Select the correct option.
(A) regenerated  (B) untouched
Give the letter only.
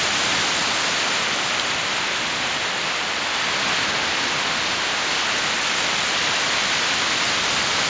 B